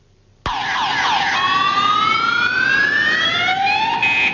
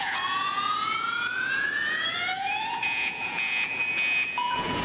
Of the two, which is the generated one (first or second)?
second